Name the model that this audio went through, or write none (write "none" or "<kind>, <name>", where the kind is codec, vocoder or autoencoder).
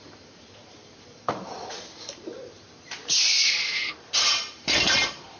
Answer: vocoder, BigVGAN v2